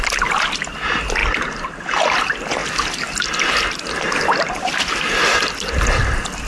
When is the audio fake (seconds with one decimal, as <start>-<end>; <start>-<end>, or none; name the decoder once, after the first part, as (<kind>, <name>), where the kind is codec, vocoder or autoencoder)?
none